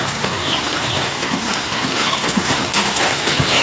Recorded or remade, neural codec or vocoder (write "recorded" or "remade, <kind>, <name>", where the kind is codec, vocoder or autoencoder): remade, codec, SNAC